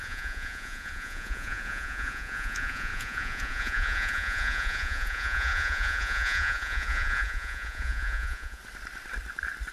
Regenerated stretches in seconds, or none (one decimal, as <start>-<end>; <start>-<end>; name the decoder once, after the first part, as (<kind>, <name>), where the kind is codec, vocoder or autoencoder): 0.0-8.6 (vocoder, Vocos)